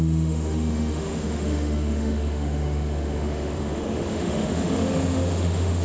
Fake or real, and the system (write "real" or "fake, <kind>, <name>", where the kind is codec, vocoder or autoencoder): fake, autoencoder, DAC-VAE